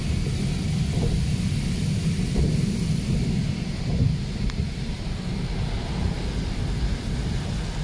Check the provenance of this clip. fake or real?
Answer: real